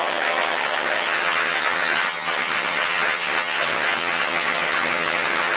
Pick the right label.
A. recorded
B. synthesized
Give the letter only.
B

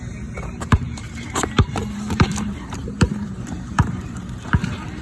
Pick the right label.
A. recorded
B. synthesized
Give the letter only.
B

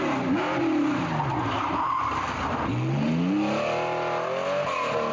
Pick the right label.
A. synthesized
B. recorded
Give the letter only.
B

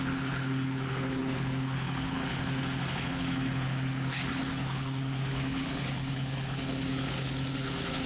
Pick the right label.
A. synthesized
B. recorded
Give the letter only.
A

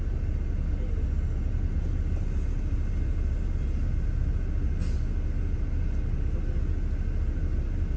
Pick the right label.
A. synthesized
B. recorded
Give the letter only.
B